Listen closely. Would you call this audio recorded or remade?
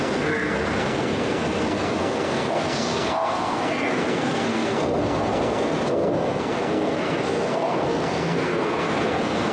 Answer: remade